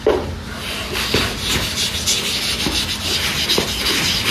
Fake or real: real